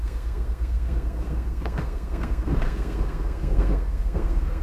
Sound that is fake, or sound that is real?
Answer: fake